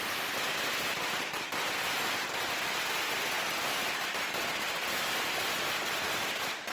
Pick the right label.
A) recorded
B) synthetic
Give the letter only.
A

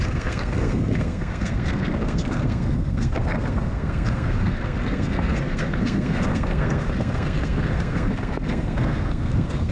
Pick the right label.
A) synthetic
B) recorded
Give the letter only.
A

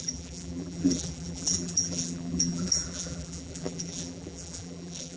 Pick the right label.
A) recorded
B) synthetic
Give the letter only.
B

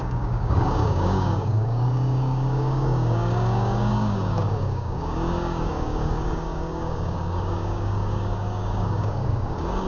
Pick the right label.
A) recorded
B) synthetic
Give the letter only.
B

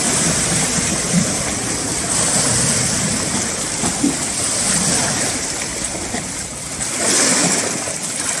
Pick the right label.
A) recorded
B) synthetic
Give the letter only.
A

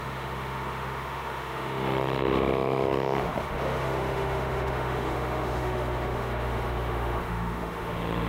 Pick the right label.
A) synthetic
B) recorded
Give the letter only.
A